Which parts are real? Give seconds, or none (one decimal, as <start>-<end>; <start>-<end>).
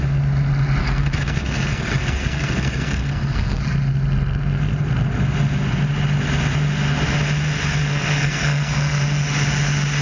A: 0.0-0.8; 3.6-7.8; 9.0-10.0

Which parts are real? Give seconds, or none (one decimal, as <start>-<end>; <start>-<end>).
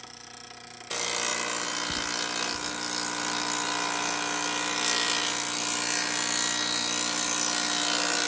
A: 0.0-8.3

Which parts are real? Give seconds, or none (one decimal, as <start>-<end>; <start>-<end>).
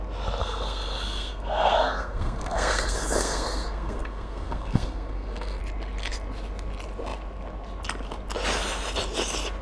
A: 0.0-0.4; 5.6-9.6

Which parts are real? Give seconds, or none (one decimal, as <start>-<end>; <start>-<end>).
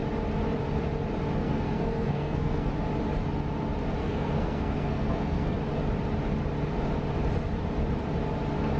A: 0.0-1.4; 2.7-4.0; 5.6-8.8